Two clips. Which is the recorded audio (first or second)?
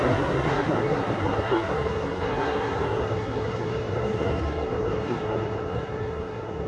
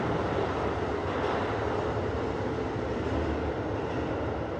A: second